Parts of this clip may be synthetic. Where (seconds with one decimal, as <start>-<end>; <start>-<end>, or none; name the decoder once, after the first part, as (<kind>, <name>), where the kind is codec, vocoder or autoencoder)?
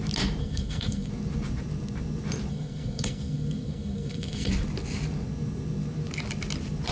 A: 0.4-1.1 (codec, SNAC); 2.5-4.5